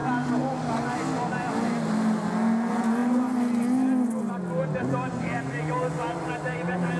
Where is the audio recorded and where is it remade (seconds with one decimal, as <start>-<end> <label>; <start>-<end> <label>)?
0.0-7.0 recorded